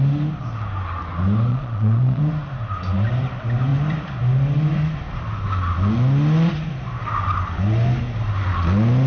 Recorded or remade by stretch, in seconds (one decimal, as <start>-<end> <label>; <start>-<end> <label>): 0.0-1.5 recorded; 1.5-2.2 remade; 2.2-9.1 recorded